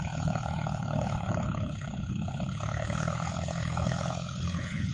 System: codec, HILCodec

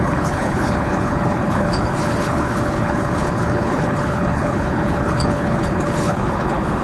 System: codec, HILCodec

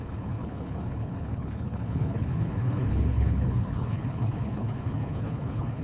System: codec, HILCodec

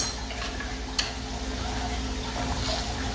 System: none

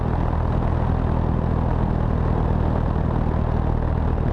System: none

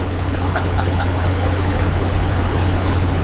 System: codec, HILCodec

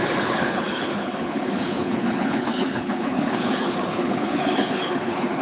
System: codec, HILCodec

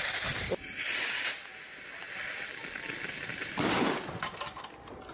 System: none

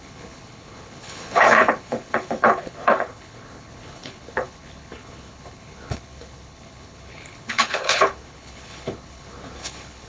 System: codec, HILCodec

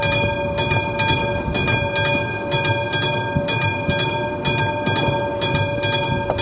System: none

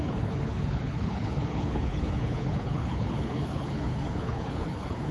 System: codec, HILCodec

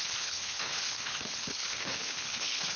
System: codec, HILCodec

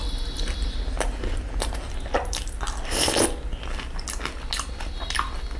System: none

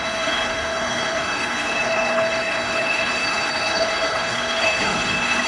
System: codec, HILCodec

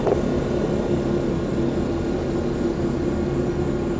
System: none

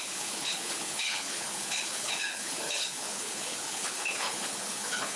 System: codec, HILCodec